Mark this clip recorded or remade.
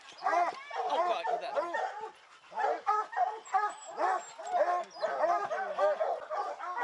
recorded